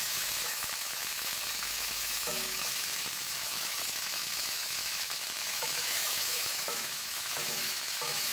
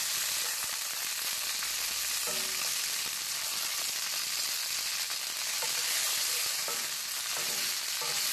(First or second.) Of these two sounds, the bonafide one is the second